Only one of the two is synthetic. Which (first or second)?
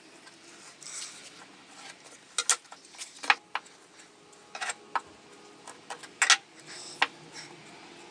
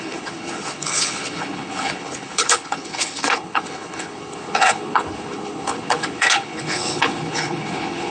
second